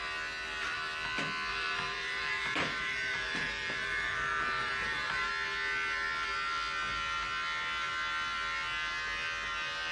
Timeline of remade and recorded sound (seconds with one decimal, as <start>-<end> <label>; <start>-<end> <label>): 0.0-1.5 recorded; 1.5-5.3 remade; 5.3-9.9 recorded